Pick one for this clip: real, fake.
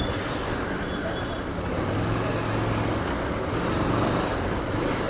real